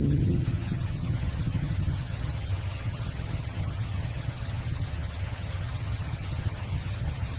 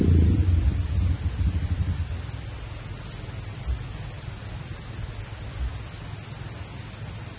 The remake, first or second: first